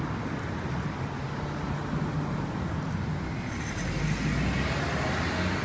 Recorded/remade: recorded